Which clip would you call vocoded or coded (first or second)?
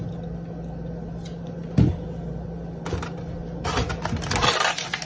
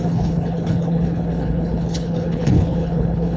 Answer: second